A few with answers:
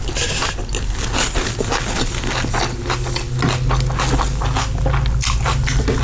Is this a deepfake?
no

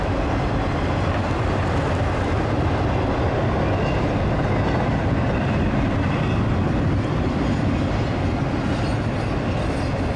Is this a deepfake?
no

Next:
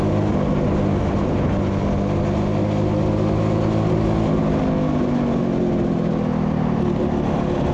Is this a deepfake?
no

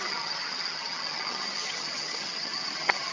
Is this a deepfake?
yes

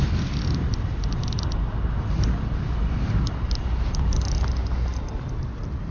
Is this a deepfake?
no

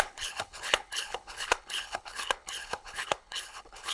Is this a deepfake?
yes